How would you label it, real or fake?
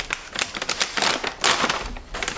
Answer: real